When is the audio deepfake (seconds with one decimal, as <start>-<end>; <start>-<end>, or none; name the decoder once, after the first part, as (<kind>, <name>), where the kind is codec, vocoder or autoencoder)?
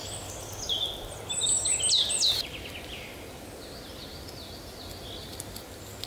none